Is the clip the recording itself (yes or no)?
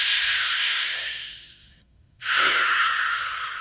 no